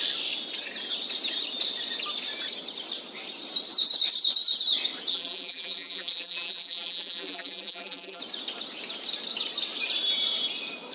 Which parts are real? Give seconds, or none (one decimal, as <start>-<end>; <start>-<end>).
0.0-5.1; 8.2-10.9